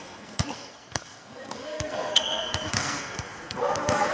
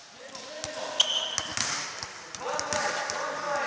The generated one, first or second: first